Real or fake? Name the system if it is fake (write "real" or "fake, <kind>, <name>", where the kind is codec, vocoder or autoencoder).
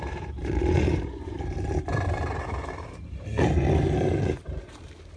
fake, vocoder, BigVGAN v2